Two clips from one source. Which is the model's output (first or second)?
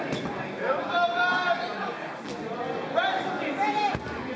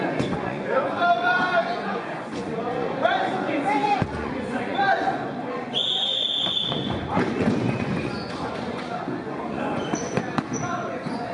second